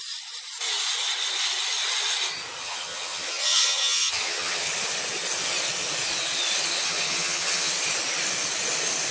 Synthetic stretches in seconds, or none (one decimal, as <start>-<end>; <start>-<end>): 2.6-4.7; 6.7-7.7